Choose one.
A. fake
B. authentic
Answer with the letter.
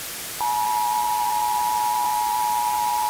A